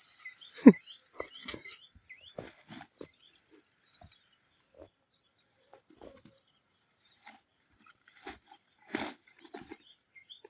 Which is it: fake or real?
real